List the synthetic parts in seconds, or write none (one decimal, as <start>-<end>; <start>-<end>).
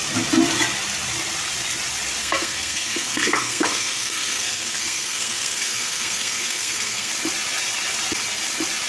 2.2-7.1